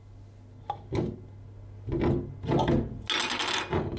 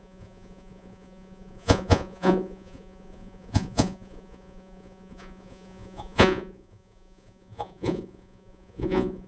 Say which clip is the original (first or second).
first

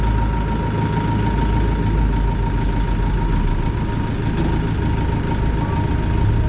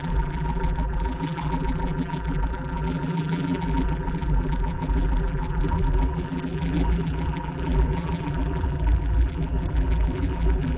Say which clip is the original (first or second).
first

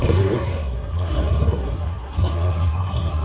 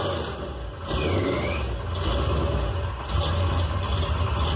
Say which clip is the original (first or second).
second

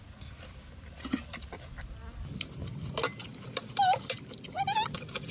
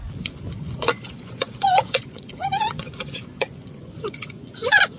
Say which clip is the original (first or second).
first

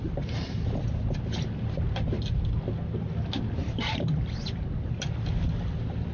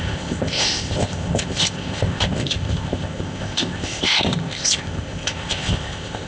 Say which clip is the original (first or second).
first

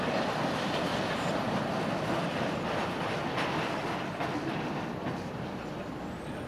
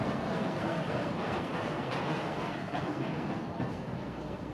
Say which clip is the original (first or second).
first